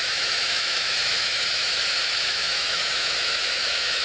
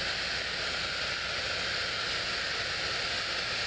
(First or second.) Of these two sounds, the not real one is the first